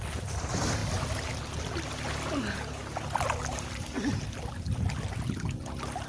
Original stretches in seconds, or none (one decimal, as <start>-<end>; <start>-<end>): 0.0-6.1